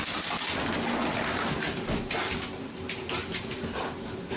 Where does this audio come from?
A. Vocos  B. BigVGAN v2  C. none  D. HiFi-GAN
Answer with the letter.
C